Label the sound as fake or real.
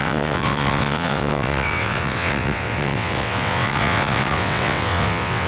fake